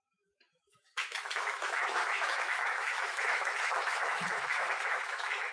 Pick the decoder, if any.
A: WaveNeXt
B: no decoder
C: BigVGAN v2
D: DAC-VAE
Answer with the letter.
D